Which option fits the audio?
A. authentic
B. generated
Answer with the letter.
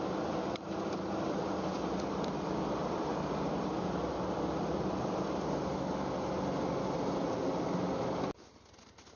A